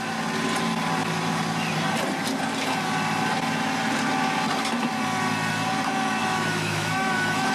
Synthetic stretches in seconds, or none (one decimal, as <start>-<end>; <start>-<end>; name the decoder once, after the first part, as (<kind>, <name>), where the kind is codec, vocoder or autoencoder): 6.2-7.5 (autoencoder, DAC-VAE)